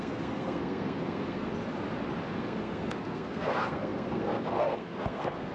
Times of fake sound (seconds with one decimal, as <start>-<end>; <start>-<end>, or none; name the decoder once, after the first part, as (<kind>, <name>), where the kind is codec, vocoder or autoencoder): 0.0-1.5 (codec, SNAC); 2.3-5.5